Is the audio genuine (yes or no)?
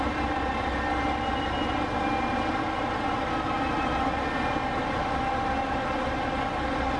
yes